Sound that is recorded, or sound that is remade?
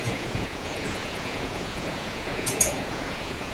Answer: remade